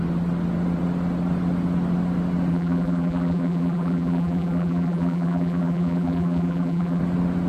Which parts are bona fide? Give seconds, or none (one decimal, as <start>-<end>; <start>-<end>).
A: 0.0-2.5; 7.0-7.5